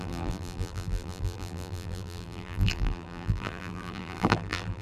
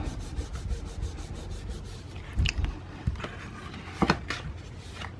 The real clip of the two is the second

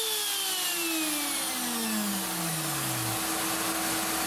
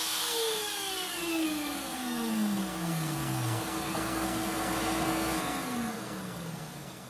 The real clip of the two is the first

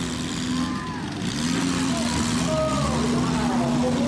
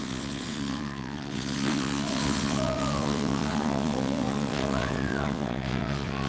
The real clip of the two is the first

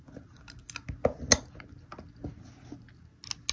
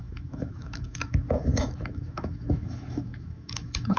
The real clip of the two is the first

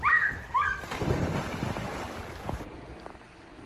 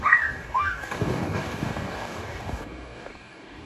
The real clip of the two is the first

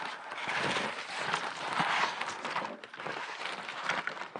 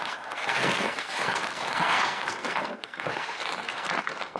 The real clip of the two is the first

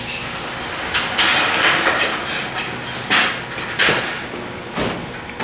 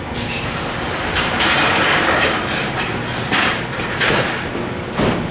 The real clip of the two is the first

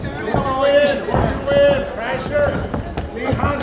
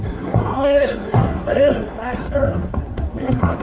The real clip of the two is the first